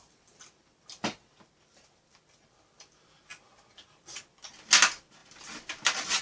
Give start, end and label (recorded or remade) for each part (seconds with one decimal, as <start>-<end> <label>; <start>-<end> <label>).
0.0-6.2 recorded